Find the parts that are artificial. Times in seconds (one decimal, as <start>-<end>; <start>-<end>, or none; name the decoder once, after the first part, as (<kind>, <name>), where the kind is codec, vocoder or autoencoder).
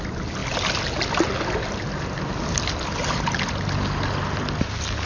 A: none